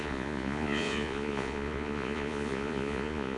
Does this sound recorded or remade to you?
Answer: remade